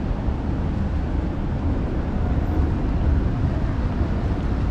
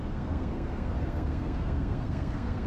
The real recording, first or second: first